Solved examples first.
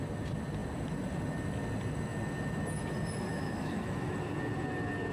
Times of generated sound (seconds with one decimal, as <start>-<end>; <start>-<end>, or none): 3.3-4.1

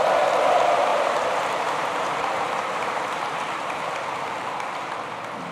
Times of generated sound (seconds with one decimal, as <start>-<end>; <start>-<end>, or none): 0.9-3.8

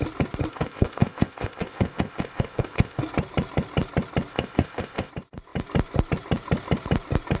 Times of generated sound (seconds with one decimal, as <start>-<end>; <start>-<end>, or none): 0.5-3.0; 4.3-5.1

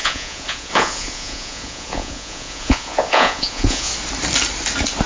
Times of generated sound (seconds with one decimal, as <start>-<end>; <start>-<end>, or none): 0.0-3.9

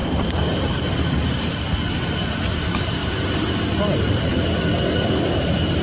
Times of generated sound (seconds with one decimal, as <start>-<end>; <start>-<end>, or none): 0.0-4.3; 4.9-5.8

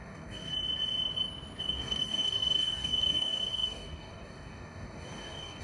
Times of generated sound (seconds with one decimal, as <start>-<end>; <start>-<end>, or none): 0.0-0.5; 1.6-5.6

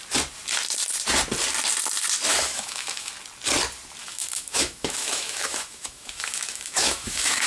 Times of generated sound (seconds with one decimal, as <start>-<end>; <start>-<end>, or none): 2.3-3.1; 4.0-7.5